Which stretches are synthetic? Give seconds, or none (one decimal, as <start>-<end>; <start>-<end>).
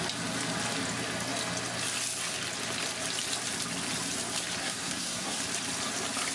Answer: 4.6-5.4